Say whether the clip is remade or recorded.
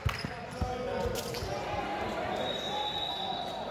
recorded